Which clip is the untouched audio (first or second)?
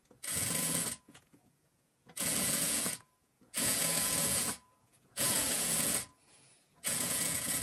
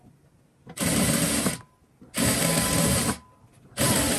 second